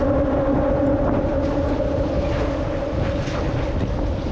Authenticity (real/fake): real